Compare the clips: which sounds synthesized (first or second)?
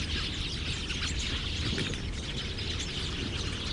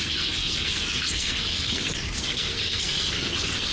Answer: second